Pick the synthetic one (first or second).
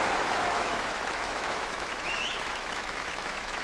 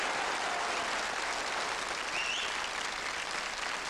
first